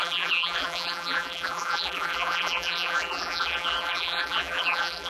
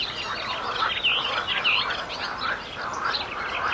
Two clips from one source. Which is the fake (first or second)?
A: first